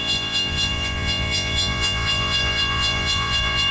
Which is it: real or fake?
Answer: fake